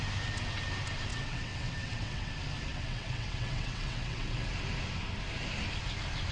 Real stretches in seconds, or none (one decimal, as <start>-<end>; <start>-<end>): 0.0-1.1; 2.3-2.7; 4.5-6.3